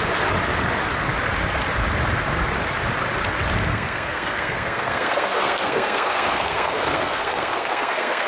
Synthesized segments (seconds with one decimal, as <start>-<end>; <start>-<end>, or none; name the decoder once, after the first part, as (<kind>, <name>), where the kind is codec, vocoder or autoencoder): 3.7-8.3 (codec, SNAC)